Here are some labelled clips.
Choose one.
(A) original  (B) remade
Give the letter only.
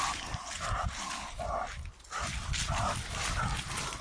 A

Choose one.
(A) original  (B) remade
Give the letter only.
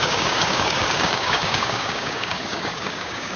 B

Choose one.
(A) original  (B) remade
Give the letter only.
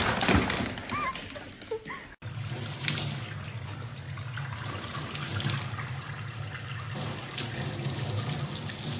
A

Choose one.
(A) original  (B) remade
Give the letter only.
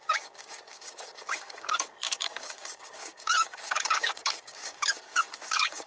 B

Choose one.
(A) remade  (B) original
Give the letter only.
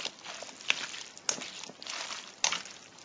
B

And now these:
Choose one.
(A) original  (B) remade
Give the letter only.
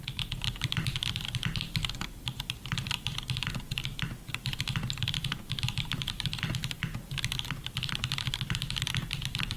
A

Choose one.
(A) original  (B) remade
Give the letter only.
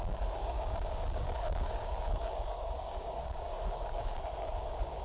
B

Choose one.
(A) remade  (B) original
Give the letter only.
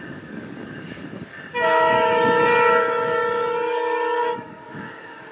A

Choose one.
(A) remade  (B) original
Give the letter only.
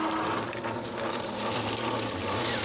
B